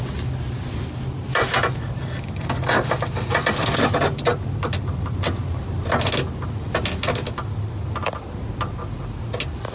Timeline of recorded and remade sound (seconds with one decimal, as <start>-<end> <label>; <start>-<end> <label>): 0.0-9.7 recorded